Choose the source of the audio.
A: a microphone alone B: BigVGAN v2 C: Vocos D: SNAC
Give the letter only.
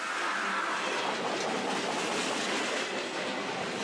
A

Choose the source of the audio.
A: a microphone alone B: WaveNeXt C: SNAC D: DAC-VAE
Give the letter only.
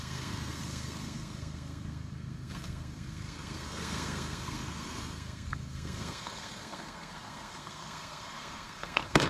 C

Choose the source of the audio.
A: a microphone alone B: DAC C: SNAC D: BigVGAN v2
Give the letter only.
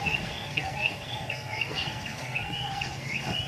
C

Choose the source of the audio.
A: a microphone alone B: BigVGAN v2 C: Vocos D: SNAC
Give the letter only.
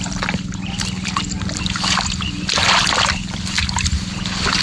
A